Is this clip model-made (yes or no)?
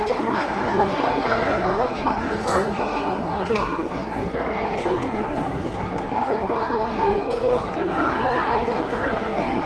yes